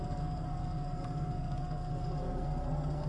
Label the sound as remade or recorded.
remade